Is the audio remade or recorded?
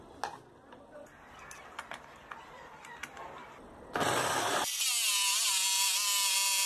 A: recorded